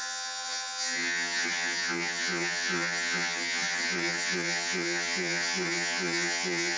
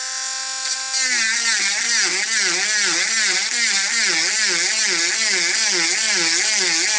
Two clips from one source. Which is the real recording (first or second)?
second